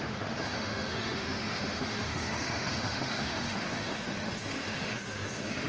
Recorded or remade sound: remade